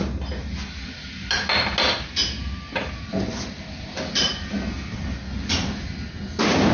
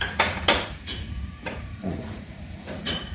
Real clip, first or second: first